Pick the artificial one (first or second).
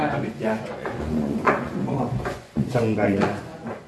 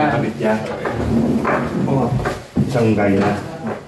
first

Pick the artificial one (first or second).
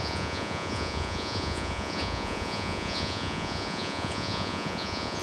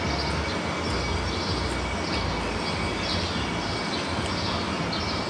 first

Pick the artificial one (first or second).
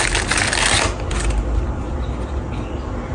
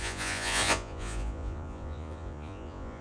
second